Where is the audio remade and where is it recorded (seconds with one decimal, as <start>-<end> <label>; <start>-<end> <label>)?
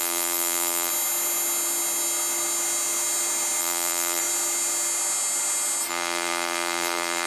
0.0-0.9 remade; 0.9-3.6 recorded; 3.6-4.2 remade; 4.2-5.9 recorded; 5.9-7.3 remade